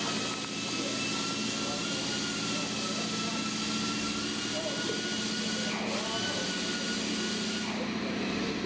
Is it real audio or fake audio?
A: real